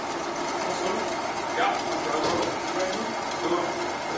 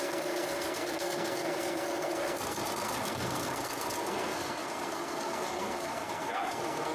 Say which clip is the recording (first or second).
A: first